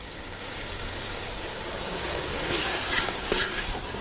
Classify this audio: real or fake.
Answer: fake